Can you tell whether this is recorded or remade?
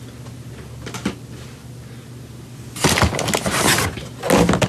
recorded